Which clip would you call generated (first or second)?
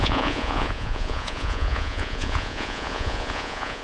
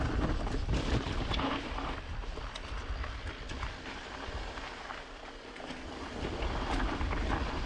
first